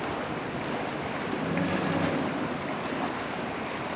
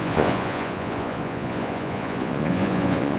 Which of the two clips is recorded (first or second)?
first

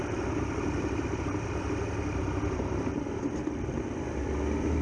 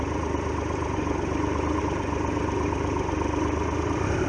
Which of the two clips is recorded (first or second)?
second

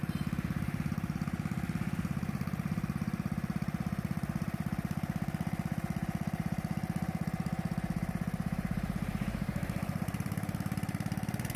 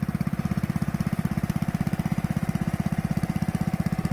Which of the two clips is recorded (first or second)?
second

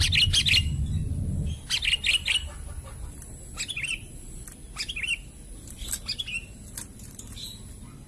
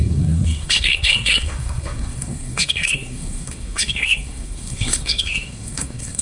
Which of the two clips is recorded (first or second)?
first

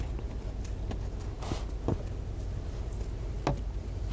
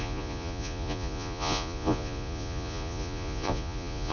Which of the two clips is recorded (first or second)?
first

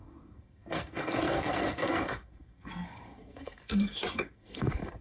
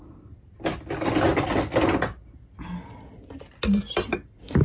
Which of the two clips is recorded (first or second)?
second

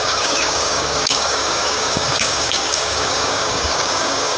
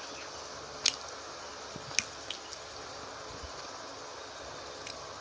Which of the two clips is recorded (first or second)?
second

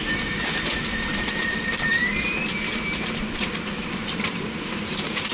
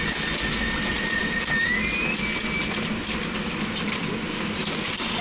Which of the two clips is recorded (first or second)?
second